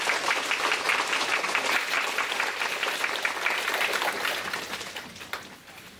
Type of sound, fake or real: fake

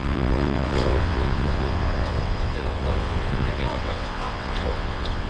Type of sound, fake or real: fake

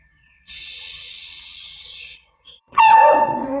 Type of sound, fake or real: fake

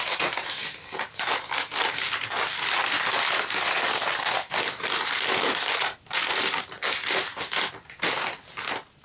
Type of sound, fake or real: real